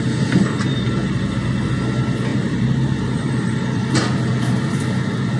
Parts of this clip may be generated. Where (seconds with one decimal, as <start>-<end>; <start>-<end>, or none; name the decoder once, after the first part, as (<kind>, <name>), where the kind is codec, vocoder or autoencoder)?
2.3-3.6 (vocoder, BigVGAN v2)